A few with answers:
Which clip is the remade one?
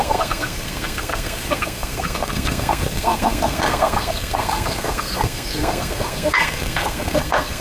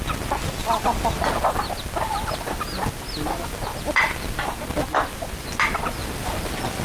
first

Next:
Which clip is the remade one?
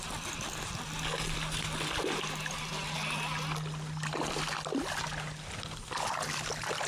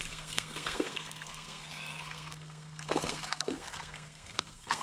second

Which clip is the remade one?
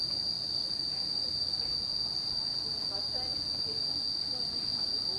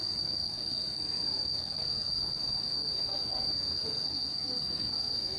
second